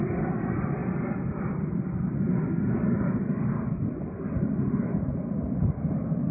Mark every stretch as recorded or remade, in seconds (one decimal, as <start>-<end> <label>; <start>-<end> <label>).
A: 0.0-6.3 recorded